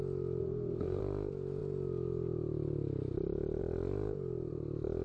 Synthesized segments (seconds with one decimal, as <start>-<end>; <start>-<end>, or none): 0.4-1.0